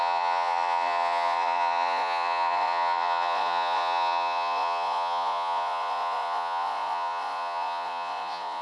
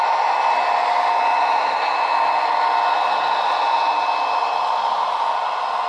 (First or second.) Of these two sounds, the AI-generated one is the first